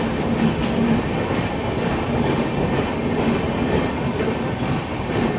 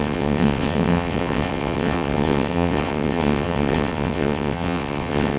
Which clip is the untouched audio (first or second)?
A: first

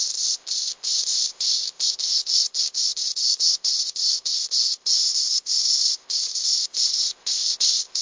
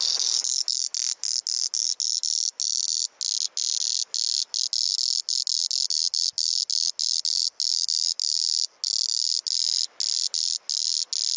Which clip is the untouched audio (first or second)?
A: second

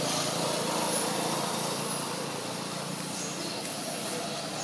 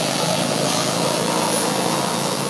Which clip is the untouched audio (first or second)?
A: first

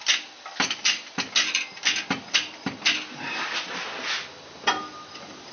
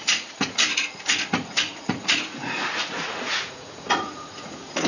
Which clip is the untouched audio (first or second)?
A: first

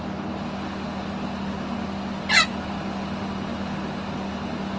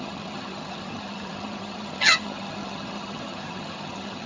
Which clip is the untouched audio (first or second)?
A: first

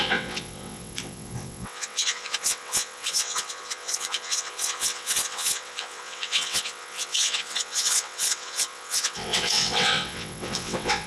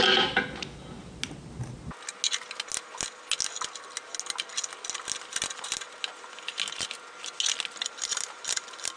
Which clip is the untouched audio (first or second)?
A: second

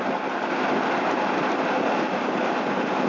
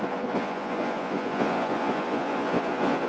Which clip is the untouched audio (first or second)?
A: first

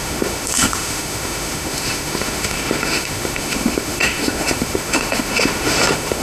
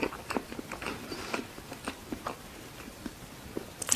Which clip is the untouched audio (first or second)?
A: second